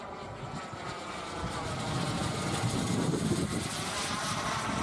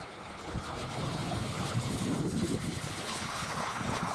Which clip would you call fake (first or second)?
second